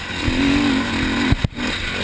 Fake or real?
real